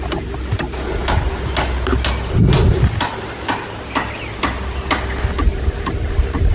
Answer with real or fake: real